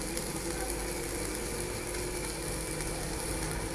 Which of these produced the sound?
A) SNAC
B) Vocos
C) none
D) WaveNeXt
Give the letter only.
C